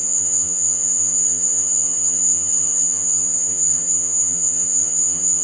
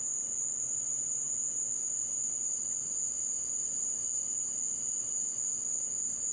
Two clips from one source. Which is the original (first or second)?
second